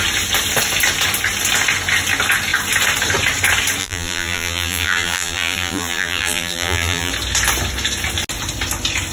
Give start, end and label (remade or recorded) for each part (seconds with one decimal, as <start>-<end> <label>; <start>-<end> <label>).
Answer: 0.0-3.8 recorded; 3.8-7.1 remade; 7.1-9.1 recorded